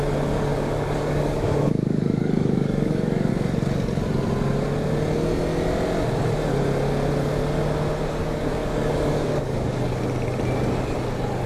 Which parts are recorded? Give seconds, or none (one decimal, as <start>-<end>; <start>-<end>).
0.0-0.5; 3.3-8.2; 10.0-11.5